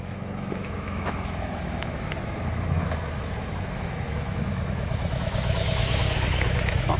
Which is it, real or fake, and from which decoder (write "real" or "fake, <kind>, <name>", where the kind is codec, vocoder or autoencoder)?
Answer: fake, autoencoder, DAC-VAE